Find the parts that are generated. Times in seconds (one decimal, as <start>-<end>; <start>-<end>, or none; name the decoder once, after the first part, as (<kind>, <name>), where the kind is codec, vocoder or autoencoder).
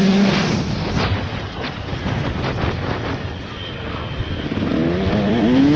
0.0-0.6 (vocoder, BigVGAN v2); 1.9-5.8